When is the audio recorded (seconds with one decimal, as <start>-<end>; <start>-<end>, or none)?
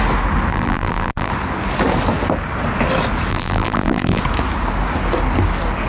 0.0-0.5; 1.3-3.3; 4.2-5.9